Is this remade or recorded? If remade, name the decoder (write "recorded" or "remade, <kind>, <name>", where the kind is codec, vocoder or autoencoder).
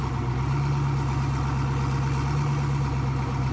recorded